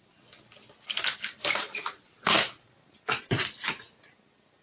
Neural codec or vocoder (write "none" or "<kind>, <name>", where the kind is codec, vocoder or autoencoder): none